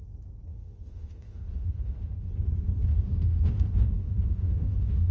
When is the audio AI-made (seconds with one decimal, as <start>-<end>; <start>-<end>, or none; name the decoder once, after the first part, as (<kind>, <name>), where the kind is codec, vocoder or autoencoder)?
0.5-2.3 (autoencoder, DAC-VAE); 2.9-5.1